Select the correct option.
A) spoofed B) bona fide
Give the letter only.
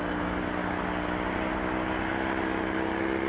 B